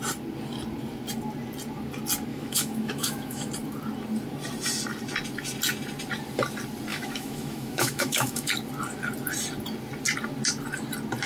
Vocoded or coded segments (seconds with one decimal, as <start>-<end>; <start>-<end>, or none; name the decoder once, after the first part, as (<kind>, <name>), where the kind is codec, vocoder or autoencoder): 2.3-3.5 (autoencoder, DAC-VAE); 6.9-8.5